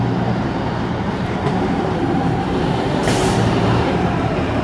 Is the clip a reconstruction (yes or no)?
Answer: yes